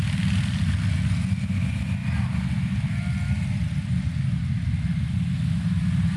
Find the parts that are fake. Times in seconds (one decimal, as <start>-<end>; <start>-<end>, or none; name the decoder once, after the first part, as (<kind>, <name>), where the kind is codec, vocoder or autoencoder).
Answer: none